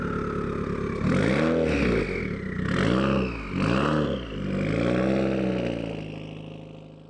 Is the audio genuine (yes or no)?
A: yes